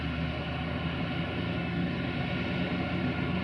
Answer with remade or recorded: recorded